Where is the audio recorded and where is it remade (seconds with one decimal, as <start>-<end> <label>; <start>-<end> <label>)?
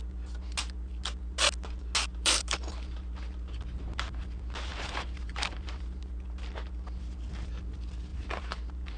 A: 0.0-2.1 recorded; 2.1-2.7 remade; 2.7-4.7 recorded; 4.7-6.0 remade; 6.0-8.1 recorded; 8.1-9.0 remade